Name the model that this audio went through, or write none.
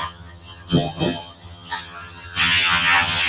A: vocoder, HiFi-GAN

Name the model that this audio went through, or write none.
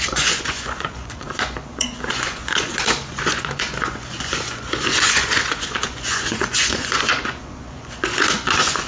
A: vocoder, Vocos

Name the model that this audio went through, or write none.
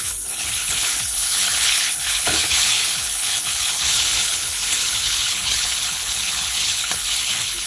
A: codec, HILCodec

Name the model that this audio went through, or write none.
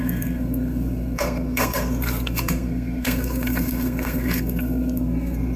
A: codec, SNAC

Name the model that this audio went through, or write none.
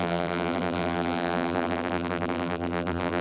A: vocoder, BigVGAN v2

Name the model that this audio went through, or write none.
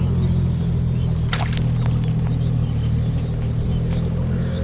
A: none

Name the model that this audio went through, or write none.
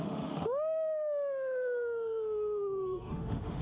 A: autoencoder, DAC-VAE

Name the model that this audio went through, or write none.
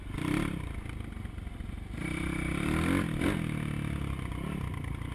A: none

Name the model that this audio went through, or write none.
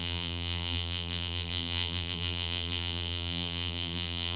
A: vocoder, BigVGAN v2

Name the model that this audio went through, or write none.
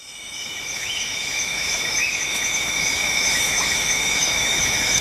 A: autoencoder, DAC-VAE